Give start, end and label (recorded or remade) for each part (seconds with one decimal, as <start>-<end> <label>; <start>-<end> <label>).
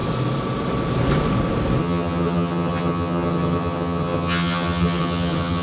0.0-1.8 recorded; 1.8-5.6 remade